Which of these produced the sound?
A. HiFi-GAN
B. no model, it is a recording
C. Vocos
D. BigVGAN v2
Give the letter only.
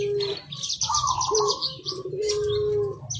B